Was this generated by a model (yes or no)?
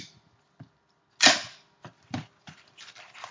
no